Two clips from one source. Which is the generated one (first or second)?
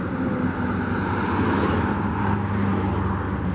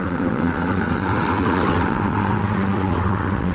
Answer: second